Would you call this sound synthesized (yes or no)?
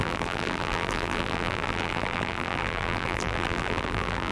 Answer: yes